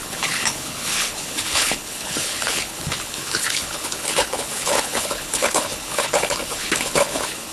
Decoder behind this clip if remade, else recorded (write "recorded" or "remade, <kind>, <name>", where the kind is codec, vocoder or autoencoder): remade, codec, HILCodec